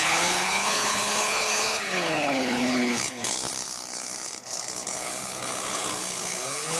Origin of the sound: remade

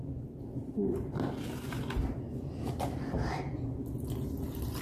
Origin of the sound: recorded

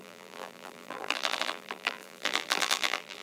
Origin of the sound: remade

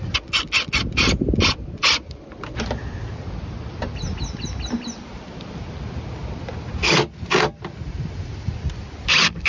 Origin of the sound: recorded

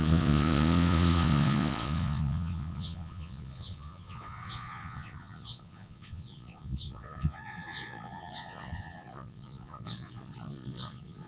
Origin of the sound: remade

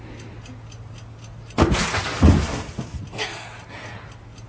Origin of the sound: recorded